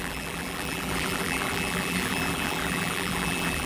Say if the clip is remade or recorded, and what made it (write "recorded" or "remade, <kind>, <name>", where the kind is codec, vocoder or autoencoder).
remade, vocoder, BigVGAN v2